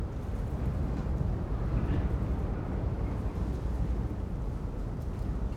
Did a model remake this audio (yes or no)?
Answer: yes